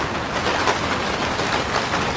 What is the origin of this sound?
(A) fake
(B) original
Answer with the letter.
B